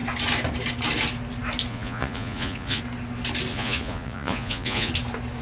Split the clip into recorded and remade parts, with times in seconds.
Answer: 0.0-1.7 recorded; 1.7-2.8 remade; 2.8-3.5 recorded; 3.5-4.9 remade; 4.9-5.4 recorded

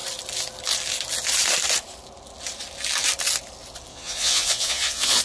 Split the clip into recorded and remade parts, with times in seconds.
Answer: 0.0-3.9 recorded; 3.9-5.2 remade

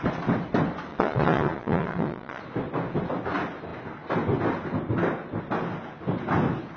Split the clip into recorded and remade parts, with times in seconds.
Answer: 0.0-0.9 recorded; 0.9-2.4 remade; 2.4-6.8 recorded

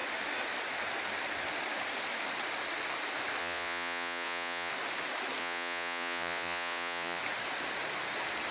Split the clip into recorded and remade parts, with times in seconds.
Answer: 0.0-3.4 recorded; 3.4-4.7 remade; 4.7-5.4 recorded; 5.4-7.2 remade; 7.2-8.5 recorded

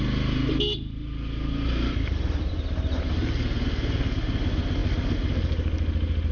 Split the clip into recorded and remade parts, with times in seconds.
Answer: 0.0-6.3 recorded